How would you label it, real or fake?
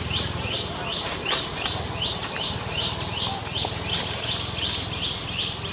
real